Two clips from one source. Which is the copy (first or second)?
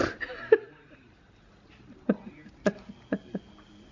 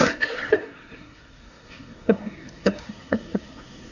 second